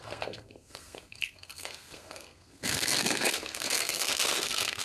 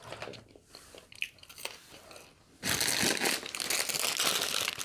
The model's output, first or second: first